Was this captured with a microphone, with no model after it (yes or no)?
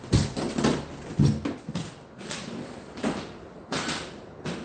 yes